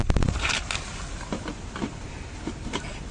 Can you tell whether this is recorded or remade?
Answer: recorded